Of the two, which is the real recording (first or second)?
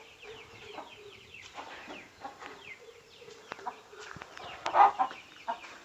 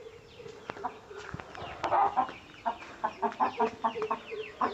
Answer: second